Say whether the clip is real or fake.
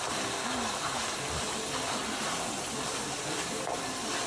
real